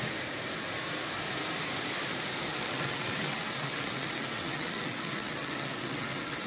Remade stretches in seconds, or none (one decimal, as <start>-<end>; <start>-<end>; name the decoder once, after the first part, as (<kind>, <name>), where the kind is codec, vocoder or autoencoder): 2.5-6.5 (vocoder, WaveNeXt)